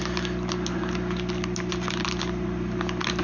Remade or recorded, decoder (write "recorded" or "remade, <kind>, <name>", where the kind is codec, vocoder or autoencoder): recorded